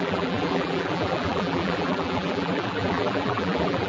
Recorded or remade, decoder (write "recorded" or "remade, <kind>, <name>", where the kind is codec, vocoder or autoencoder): remade, vocoder, BigVGAN v2